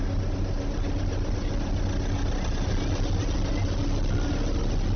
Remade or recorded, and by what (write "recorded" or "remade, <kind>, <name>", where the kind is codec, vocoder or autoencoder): recorded